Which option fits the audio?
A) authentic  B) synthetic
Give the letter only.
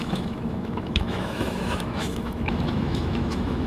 B